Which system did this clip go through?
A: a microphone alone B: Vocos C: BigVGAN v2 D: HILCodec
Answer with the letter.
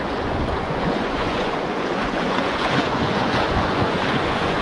B